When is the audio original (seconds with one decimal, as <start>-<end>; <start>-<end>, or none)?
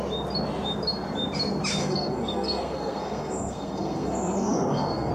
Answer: 0.0-1.8